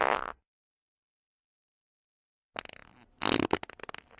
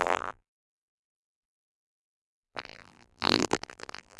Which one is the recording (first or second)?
first